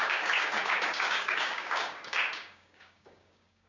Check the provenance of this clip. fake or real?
fake